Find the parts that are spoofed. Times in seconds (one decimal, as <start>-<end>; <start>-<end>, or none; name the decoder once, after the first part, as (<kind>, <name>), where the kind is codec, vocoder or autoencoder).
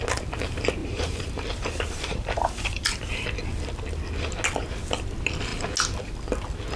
0.8-3.0 (vocoder, BigVGAN v2)